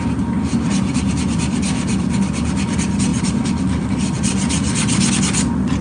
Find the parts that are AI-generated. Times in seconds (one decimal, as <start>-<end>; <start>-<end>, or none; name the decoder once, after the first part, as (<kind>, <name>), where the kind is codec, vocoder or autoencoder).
none